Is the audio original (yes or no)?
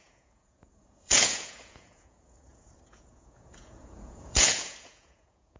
no